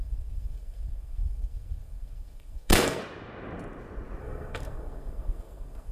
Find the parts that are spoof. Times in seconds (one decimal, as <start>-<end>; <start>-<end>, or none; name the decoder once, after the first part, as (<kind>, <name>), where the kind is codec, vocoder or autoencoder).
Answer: 0.0-3.0 (codec, SNAC); 4.2-5.9

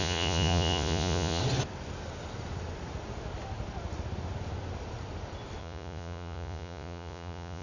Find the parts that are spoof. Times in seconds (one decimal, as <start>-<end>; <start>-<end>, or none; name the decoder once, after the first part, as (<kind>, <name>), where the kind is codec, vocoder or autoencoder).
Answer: 0.0-1.4 (vocoder, Vocos); 5.6-7.6